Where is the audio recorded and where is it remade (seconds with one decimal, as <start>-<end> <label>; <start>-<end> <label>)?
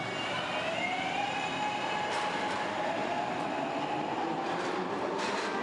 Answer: 0.0-5.6 recorded